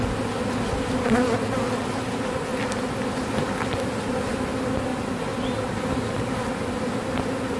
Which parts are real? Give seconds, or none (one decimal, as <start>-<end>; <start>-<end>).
0.0-7.6